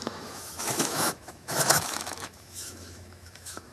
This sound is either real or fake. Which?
fake